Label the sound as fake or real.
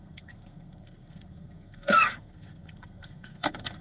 fake